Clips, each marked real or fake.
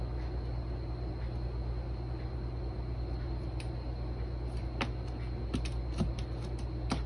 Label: real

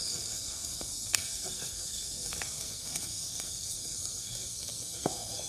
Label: fake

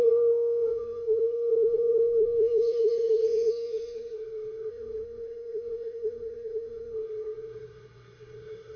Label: fake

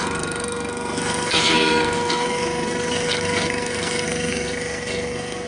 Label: fake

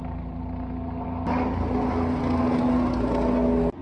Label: real